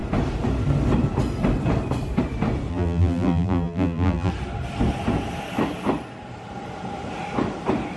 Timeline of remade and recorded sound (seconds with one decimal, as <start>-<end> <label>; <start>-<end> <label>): 0.0-2.7 recorded; 2.7-4.3 remade; 4.3-8.0 recorded